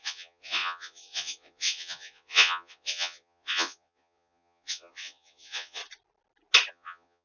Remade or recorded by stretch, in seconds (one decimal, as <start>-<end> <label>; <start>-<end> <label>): 0.0-5.8 remade; 5.8-6.7 recorded; 6.7-7.2 remade